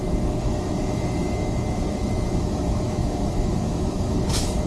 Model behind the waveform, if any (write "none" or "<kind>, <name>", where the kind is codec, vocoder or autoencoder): autoencoder, DAC-VAE